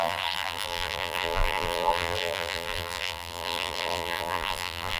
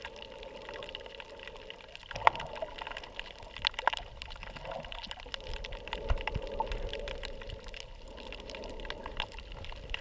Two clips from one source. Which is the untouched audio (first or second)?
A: second